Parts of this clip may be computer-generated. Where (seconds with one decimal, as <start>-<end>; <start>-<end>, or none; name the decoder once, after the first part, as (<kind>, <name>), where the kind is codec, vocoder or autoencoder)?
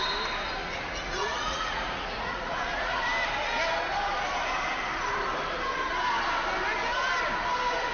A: 0.6-3.0 (vocoder, Vocos)